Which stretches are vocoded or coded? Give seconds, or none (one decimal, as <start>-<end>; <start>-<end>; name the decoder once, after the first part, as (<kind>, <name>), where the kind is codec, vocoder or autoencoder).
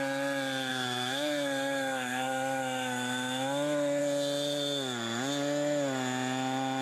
0.7-4.0 (autoencoder, DAC-VAE)